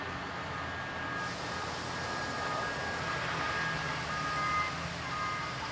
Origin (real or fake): real